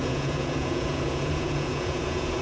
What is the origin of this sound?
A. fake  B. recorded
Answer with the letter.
A